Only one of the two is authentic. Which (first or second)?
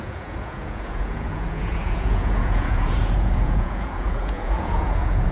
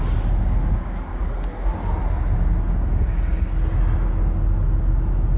second